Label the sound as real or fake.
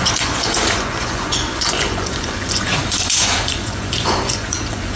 fake